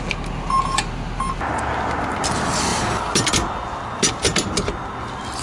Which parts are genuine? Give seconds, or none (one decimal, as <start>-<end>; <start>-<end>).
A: 0.0-5.4